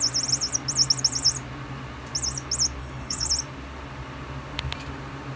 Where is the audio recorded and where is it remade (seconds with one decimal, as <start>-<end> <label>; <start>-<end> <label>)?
0.0-2.8 recorded; 2.8-3.3 remade; 3.3-5.4 recorded